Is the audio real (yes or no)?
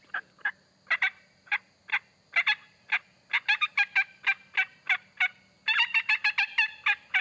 yes